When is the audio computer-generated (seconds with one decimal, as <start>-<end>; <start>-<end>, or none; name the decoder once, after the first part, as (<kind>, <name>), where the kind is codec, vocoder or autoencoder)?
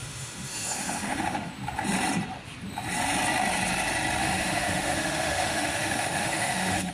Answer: 0.0-1.5 (autoencoder, DAC-VAE); 4.2-6.9